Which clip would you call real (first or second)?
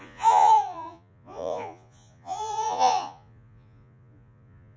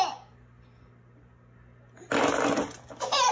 second